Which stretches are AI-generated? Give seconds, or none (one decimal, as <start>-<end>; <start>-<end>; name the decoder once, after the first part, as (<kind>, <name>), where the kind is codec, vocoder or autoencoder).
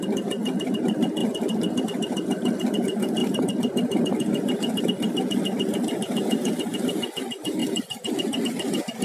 1.2-1.8 (vocoder, BigVGAN v2)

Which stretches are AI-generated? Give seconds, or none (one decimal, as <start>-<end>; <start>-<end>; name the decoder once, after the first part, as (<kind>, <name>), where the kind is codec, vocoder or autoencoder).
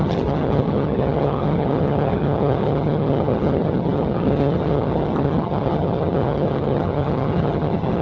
0.0-8.0 (vocoder, HiFi-GAN)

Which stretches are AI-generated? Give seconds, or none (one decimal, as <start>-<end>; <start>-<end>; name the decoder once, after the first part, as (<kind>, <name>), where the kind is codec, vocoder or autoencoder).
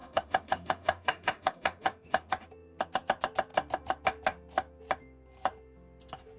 0.0-2.3 (autoencoder, DAC-VAE)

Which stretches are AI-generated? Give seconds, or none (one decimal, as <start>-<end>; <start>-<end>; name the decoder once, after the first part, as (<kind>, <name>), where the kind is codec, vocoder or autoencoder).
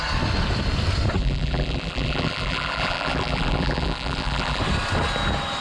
1.2-4.6 (vocoder, BigVGAN v2)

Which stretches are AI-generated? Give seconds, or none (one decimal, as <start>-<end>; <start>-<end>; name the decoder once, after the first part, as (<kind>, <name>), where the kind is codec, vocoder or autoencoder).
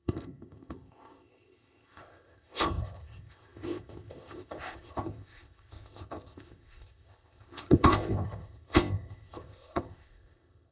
0.0-10.7 (codec, ZipCodec)